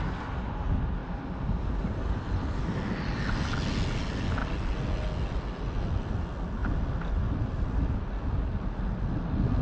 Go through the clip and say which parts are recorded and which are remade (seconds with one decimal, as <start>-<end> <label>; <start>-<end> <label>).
0.0-9.6 recorded